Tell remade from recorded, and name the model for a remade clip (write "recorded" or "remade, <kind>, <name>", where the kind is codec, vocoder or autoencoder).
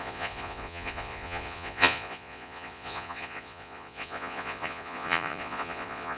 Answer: remade, vocoder, Vocos